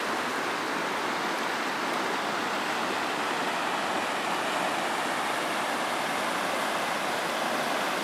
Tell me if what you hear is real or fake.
real